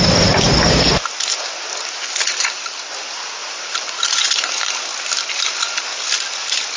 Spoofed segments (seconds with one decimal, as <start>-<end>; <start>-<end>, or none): none